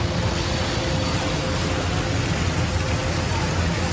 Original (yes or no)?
yes